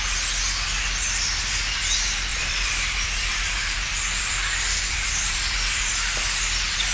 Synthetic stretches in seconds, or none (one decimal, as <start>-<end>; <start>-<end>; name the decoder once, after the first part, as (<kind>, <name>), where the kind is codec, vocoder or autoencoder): 2.3-6.4 (vocoder, BigVGAN v2)